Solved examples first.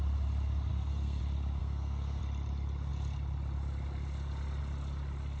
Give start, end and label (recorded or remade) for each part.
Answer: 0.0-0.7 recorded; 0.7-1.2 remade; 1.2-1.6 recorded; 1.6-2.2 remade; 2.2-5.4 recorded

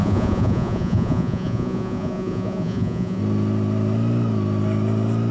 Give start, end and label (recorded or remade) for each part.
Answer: 0.0-3.2 remade; 3.2-5.3 recorded

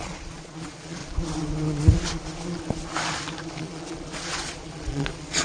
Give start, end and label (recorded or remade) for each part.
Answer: 0.0-1.0 remade; 1.0-3.6 recorded; 3.6-5.4 remade